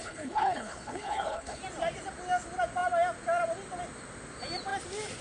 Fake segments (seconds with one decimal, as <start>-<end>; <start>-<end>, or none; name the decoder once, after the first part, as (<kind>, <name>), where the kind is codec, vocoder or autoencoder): 0.0-1.6 (codec, HILCodec)